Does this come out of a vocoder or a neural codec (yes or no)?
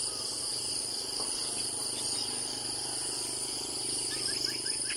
no